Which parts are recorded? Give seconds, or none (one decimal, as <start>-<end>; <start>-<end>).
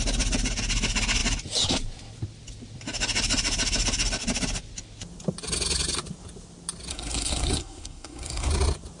0.0-6.9; 8.5-9.0